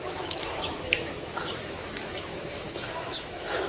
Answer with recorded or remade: remade